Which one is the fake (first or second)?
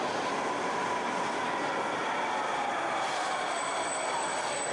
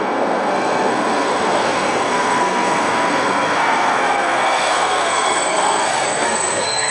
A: second